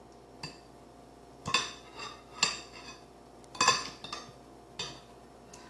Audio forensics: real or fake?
real